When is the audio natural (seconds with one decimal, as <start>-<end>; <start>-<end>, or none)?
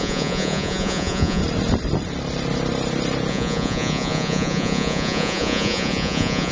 1.4-3.3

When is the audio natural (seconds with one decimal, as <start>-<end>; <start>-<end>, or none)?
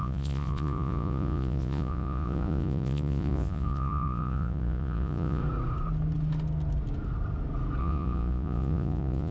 5.4-7.8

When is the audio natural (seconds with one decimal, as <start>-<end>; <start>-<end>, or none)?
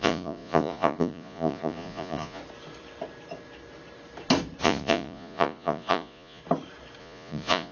2.4-4.6; 6.4-7.0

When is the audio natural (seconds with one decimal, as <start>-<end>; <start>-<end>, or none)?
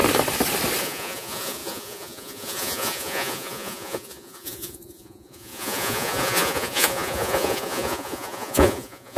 0.0-0.8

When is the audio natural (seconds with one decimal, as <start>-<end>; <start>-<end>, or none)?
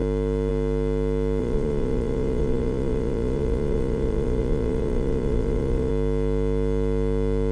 0.0-1.4; 5.9-7.5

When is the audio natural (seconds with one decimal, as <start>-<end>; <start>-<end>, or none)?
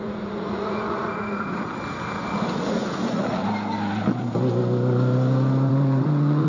1.7-2.4; 3.4-5.7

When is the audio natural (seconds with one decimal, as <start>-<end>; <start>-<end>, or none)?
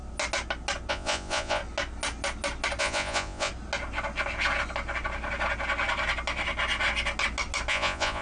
0.0-0.9; 1.6-2.8; 3.5-7.7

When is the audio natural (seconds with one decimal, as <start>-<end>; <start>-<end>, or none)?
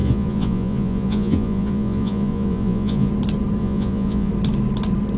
3.1-3.6; 4.3-5.2